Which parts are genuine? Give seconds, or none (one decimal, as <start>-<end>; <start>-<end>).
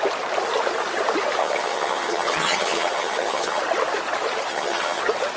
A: 0.0-1.4; 3.6-4.5; 5.0-5.4